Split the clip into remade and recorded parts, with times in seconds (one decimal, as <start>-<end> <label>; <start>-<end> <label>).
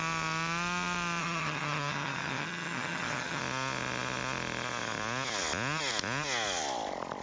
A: 0.0-1.2 recorded; 1.2-3.4 remade; 3.4-7.2 recorded